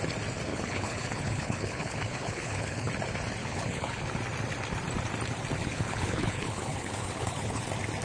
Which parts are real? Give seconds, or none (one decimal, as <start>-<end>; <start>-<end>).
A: 0.0-0.5; 2.9-3.4; 4.0-5.6; 7.6-8.0

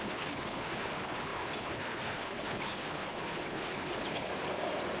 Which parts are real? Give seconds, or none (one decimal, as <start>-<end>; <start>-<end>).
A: 4.3-5.0

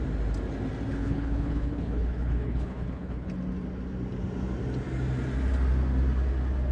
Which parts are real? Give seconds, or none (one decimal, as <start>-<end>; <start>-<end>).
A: 0.0-0.9; 3.3-6.7

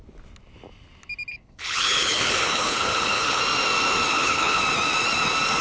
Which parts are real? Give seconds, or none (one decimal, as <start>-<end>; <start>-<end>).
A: 0.0-1.3; 3.4-4.1; 4.6-5.6

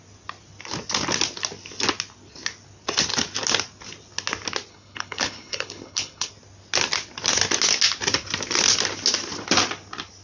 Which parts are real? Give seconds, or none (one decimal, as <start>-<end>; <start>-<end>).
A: 0.0-4.7; 6.3-10.2

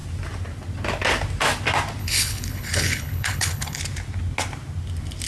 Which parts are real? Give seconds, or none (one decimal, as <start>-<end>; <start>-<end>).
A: 0.0-2.0; 3.8-5.3